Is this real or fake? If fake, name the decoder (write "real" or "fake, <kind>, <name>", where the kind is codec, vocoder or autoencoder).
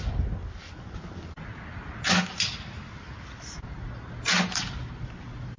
real